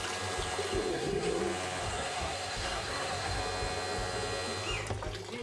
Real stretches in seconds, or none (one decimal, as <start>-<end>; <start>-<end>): 0.0-0.9; 1.4-1.8; 3.4-5.4